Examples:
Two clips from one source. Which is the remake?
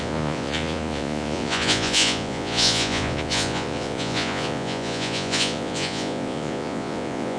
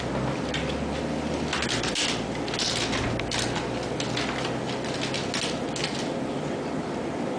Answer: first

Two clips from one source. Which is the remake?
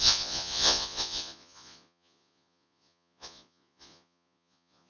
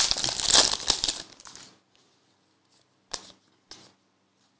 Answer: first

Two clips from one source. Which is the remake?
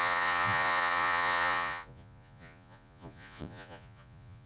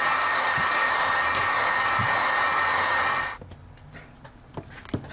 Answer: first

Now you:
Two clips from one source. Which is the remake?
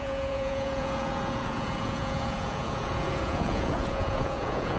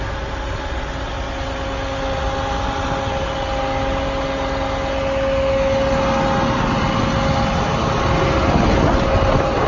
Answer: first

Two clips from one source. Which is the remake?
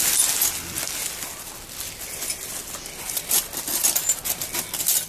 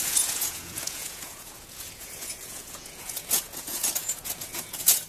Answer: second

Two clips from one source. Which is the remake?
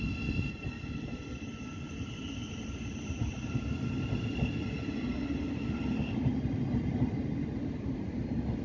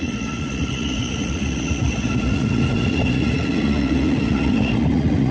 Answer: second